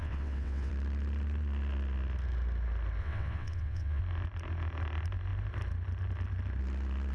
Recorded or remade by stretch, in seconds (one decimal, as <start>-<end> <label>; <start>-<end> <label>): 0.0-0.7 remade; 0.7-3.0 recorded; 3.0-4.0 remade; 4.0-7.1 recorded